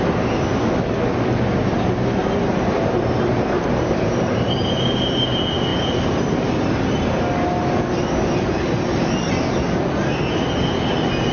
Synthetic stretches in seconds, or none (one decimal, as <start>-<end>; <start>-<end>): 2.2-4.5